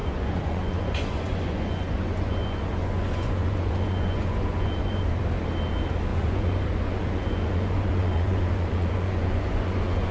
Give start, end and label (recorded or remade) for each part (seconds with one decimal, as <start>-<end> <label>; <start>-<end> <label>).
0.0-5.1 remade; 5.1-6.1 recorded; 6.1-10.1 remade